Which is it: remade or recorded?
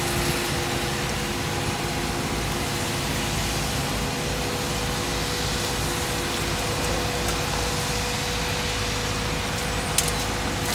recorded